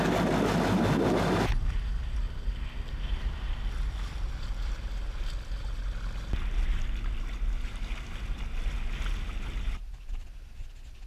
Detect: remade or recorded recorded